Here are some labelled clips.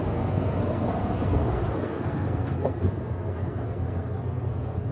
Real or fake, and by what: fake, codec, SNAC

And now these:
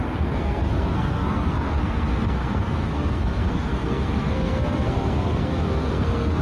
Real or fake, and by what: fake, codec, SNAC